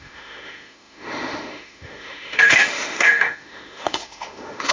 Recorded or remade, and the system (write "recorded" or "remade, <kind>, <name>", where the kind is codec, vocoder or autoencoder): remade, autoencoder, DAC-VAE